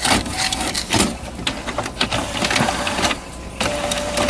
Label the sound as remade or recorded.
recorded